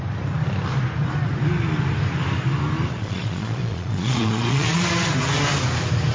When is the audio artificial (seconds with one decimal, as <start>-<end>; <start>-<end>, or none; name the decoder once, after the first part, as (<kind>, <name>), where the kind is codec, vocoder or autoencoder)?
3.0-4.8 (vocoder, Vocos)